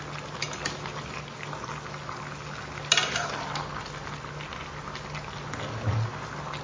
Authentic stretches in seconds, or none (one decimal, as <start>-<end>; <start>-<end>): 0.0-6.6